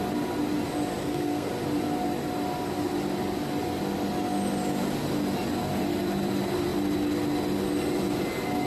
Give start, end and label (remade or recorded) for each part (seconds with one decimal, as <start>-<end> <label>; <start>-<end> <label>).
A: 0.0-1.0 recorded; 1.0-1.5 remade; 1.5-8.7 recorded